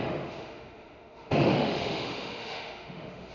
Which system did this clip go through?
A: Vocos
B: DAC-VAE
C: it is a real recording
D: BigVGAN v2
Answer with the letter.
B